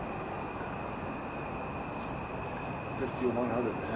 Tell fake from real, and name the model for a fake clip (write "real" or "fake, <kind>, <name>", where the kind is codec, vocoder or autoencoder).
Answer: real